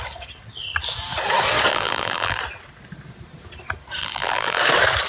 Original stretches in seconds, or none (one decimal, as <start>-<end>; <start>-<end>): 0.0-1.7; 2.4-4.0; 4.6-5.1